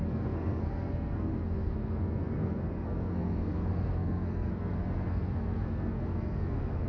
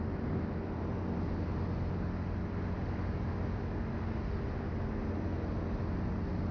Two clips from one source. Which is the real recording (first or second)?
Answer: second